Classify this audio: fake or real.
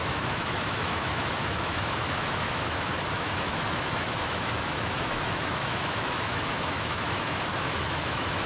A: fake